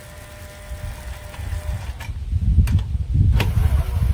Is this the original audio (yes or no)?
yes